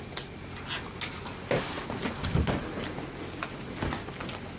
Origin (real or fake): real